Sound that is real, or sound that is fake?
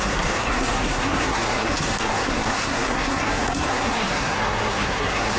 fake